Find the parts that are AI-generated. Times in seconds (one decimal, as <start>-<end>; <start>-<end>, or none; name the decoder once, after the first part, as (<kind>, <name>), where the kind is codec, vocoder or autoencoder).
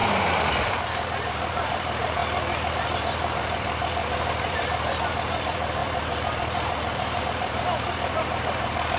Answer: 0.0-2.2 (vocoder, BigVGAN v2); 2.7-9.0